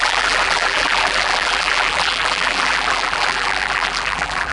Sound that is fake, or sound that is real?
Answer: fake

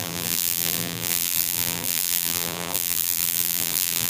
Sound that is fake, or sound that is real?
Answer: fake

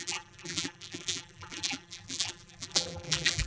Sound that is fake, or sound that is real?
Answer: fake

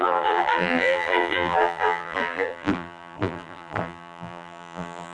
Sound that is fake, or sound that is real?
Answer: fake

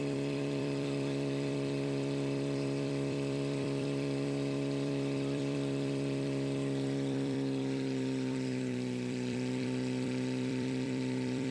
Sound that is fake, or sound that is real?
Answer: fake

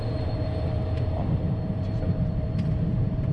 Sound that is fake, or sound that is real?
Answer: fake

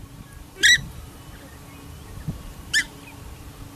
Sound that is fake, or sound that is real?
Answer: real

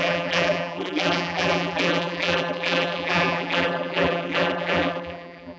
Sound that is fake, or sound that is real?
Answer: fake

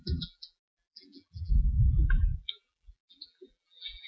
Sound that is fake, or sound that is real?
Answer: fake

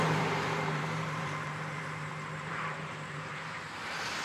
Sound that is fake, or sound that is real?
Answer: fake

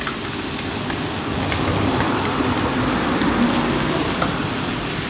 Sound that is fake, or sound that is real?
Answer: real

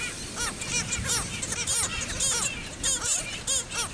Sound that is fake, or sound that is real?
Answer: real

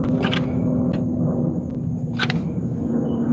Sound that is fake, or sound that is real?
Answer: real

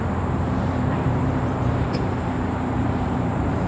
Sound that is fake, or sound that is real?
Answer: fake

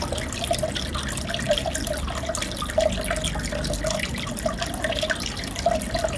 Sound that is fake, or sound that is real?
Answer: real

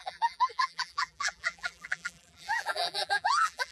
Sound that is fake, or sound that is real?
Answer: fake